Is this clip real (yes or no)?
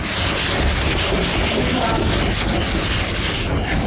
yes